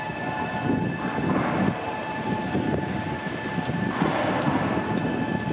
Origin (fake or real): real